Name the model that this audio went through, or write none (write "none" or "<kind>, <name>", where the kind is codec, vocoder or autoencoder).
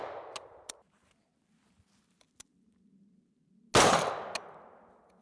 none